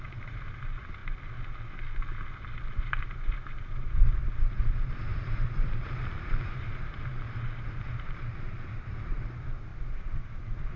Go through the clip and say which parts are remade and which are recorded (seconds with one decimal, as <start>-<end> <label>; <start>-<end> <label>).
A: 0.0-1.0 remade; 1.0-2.7 recorded; 2.7-4.2 remade; 4.2-4.9 recorded; 4.9-7.1 remade; 7.1-7.8 recorded; 7.8-10.8 remade